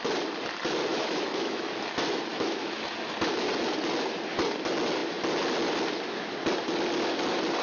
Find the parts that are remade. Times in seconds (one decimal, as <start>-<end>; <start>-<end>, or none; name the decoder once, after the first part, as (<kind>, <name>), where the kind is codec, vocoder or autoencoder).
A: 0.9-1.7 (autoencoder, DAC-VAE); 2.3-2.8